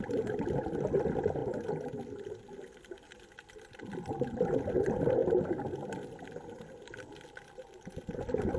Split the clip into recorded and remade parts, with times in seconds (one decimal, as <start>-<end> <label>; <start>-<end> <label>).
0.0-8.6 recorded